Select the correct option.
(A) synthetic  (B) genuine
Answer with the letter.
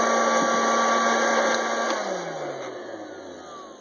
B